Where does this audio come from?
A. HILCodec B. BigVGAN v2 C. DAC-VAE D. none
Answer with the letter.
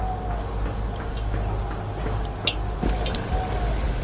D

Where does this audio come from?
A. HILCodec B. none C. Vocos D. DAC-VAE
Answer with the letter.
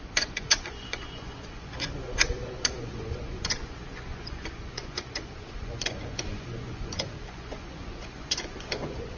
C